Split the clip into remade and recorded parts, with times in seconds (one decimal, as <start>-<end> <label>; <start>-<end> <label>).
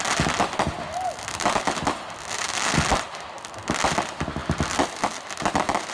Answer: 0.0-5.9 recorded